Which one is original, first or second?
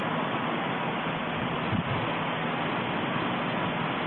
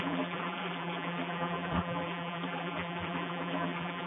first